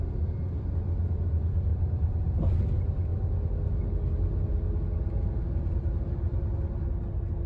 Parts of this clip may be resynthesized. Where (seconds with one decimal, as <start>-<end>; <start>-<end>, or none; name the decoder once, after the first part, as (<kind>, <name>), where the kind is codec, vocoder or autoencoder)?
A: 1.7-2.5 (vocoder, BigVGAN v2)